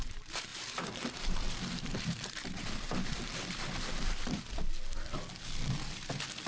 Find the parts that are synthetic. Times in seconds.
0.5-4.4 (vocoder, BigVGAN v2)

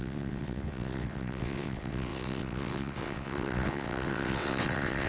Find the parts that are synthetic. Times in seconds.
0.0-5.1 (vocoder, WaveNeXt)